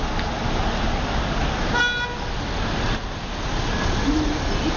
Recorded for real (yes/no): yes